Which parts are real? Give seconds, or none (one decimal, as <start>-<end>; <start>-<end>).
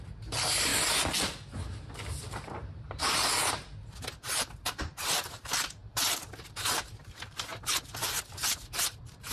0.7-2.3; 3.0-4.3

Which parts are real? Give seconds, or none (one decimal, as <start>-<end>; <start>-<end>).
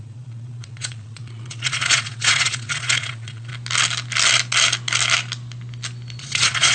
3.5-6.2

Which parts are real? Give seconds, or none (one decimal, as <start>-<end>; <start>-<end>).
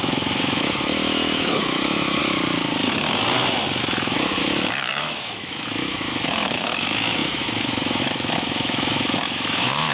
2.2-3.8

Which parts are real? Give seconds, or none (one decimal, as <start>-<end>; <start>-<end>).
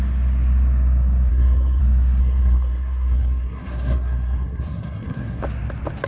0.0-1.3; 1.8-2.2; 5.4-6.1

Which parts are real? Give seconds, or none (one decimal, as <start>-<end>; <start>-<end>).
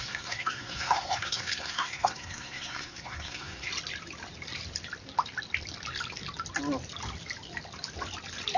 3.7-8.6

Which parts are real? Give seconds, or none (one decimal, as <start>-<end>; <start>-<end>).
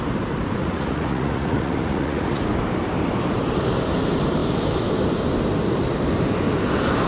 0.0-0.6; 2.4-7.1